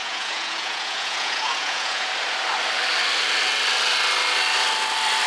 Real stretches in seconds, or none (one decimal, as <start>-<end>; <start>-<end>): 2.1-5.3